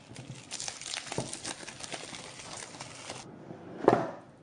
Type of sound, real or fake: real